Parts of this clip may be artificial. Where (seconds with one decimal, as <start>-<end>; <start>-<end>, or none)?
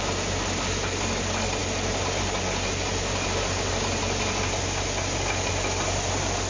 none